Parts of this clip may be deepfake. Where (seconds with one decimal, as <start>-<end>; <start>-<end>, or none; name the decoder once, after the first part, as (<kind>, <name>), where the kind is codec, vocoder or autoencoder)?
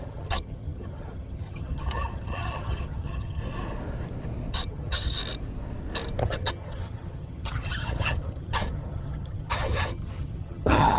0.0-3.4 (vocoder, HiFi-GAN); 4.5-5.2; 6.2-11.0